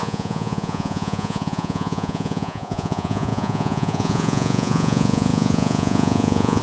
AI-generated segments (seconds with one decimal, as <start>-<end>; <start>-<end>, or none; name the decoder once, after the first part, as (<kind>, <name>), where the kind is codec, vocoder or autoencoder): 0.0-6.6 (vocoder, Vocos)